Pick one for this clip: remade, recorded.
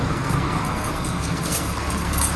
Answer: remade